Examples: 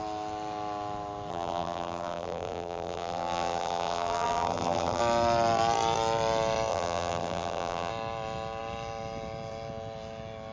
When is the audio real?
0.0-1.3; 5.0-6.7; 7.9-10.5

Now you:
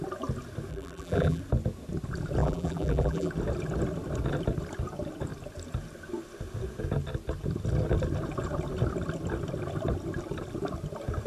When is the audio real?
0.0-0.7; 1.4-2.4; 3.3-11.3

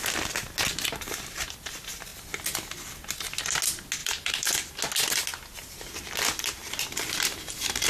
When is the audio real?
0.0-4.0; 4.8-6.6

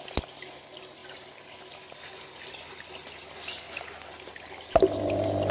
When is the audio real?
0.0-5.5

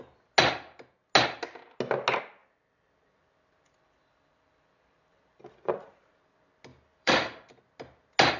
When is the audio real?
0.0-2.4; 5.9-6.7; 7.6-8.4

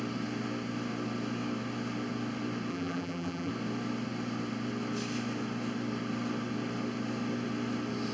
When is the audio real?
0.0-2.7; 3.5-8.1